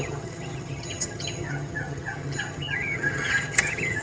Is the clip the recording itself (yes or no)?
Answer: no